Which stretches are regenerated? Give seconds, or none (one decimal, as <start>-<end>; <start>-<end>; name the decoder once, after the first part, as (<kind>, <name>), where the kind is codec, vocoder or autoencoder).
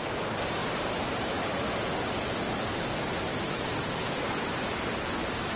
0.6-1.6 (vocoder, BigVGAN v2); 2.7-5.1